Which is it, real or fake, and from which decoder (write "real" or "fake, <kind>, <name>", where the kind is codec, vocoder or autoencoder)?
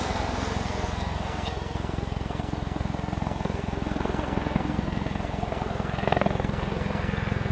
fake, codec, SNAC